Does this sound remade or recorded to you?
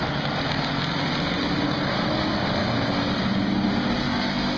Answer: recorded